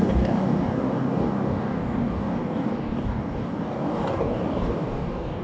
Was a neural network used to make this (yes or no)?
yes